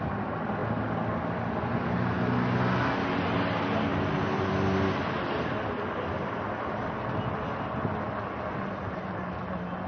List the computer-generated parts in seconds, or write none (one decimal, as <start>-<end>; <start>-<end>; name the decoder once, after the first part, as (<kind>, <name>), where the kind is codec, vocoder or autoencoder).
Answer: none